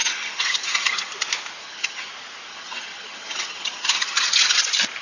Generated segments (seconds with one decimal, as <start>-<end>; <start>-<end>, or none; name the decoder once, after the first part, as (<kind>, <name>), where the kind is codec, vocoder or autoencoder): 0.0-1.1 (vocoder, HiFi-GAN); 1.6-2.1; 2.5-4.6